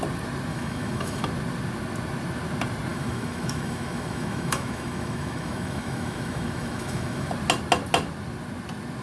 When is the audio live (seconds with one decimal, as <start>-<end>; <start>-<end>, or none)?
0.0-0.5; 1.2-2.9; 7.3-9.0